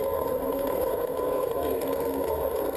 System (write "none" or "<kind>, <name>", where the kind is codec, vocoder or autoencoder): codec, SNAC